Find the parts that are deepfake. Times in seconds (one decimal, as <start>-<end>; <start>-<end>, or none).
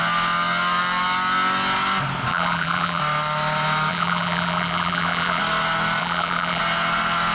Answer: 2.3-3.0; 3.9-5.4; 6.0-6.6